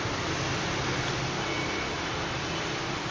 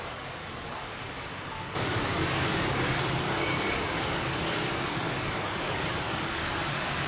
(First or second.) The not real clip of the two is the second